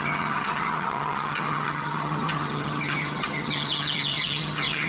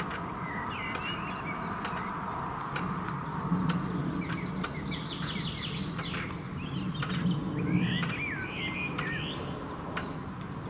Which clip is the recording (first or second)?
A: second